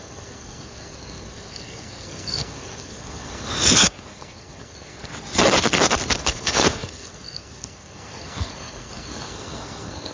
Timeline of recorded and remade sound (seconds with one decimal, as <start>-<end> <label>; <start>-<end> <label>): 0.0-5.1 remade; 5.1-6.2 recorded; 6.2-10.1 remade